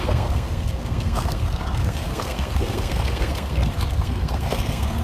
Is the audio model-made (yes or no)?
yes